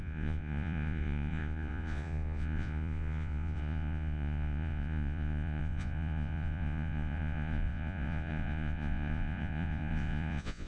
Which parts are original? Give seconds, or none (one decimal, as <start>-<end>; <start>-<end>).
none